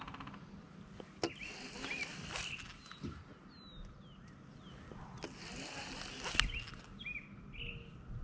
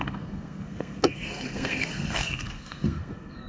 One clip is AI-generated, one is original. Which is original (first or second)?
first